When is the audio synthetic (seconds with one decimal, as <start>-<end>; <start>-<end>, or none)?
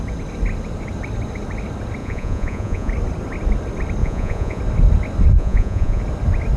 2.0-2.9; 4.0-4.6; 5.4-6.0